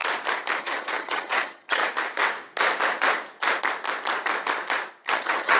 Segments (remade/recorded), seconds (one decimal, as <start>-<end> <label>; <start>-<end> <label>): 0.0-0.6 recorded; 0.6-1.8 remade; 1.8-5.1 recorded; 5.1-5.6 remade